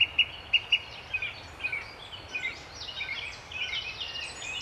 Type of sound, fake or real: real